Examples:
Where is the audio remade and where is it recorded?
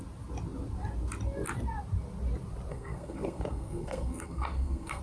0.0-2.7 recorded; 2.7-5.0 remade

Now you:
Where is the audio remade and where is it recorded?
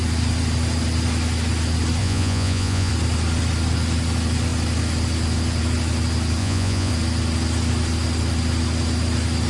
0.0-2.0 recorded; 2.0-2.9 remade; 2.9-6.4 recorded; 6.4-6.9 remade; 6.9-9.5 recorded